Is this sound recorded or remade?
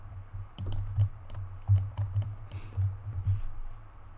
remade